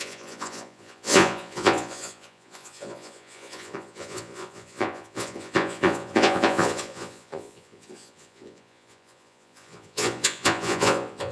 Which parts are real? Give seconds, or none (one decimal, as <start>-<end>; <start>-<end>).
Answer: none